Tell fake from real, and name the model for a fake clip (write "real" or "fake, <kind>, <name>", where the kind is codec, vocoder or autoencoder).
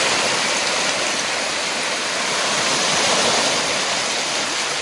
real